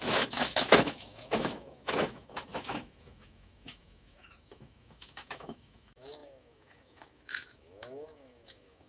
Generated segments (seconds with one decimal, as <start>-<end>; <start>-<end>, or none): 0.0-8.9